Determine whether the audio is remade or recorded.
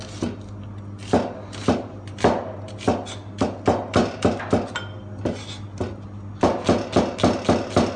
recorded